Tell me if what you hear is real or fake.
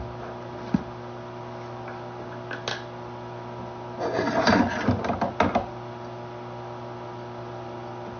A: real